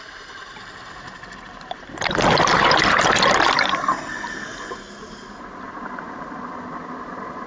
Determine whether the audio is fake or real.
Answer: real